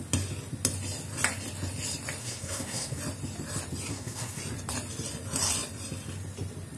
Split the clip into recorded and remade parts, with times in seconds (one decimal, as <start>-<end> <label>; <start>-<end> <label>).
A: 0.0-2.2 recorded; 2.2-3.0 remade; 3.0-3.9 recorded; 3.9-4.4 remade; 4.4-6.8 recorded